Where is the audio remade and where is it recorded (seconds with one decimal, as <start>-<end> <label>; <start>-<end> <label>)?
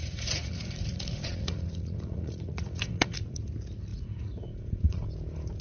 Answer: 0.0-3.4 remade; 3.4-3.9 recorded; 3.9-5.1 remade; 5.1-5.6 recorded